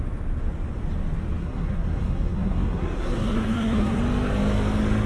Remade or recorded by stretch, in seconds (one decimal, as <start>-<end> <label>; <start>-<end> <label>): 0.0-1.4 recorded; 1.4-4.0 remade; 4.0-5.1 recorded

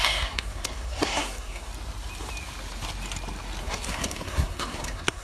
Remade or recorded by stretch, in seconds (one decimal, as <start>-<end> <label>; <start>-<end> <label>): 0.0-1.7 remade; 1.7-3.6 recorded; 3.6-5.2 remade

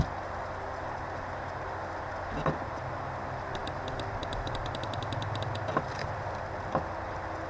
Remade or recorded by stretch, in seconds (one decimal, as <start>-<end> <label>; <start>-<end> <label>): 0.0-7.5 recorded

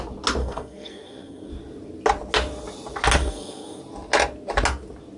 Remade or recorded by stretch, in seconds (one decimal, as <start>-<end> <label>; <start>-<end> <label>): 0.0-0.4 recorded; 0.4-1.5 remade; 1.5-3.2 recorded; 3.2-3.8 remade; 3.8-5.2 recorded

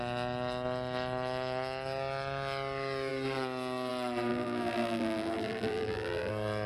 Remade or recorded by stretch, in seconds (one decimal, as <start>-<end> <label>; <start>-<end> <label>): 0.0-4.3 recorded; 4.3-6.3 remade; 6.3-6.7 recorded

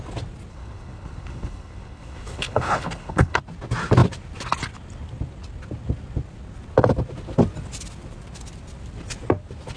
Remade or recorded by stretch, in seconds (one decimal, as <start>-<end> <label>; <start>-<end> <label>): 0.0-0.5 recorded; 0.5-3.4 remade; 3.4-9.8 recorded

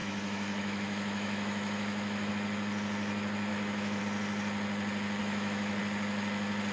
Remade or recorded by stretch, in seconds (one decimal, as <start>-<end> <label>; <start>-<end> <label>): 0.0-2.3 remade; 2.3-3.5 recorded; 3.5-4.0 remade; 4.0-5.2 recorded; 5.2-5.8 remade; 5.8-6.7 recorded

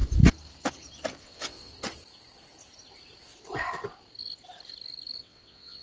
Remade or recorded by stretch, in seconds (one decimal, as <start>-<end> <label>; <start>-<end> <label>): 0.0-1.2 recorded; 1.2-1.7 remade; 1.7-5.2 recorded; 5.2-5.8 remade